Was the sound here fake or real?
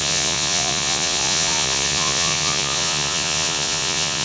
fake